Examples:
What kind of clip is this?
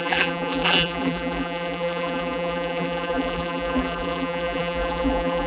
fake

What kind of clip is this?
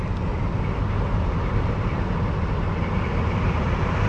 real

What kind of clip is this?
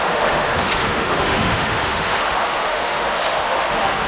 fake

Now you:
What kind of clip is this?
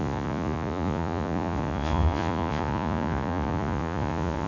fake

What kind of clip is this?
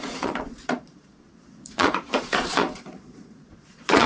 fake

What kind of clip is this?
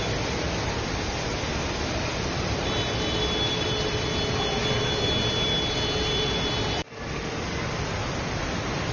real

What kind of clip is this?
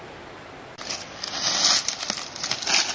real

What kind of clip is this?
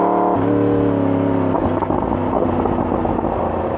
real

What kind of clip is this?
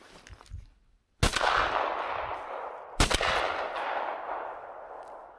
real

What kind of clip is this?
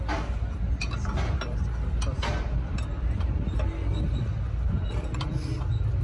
real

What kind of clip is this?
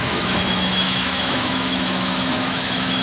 fake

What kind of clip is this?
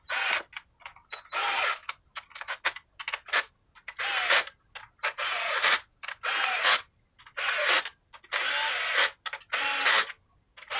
real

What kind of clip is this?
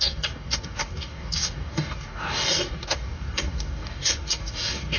fake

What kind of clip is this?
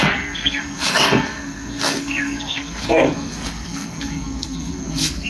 fake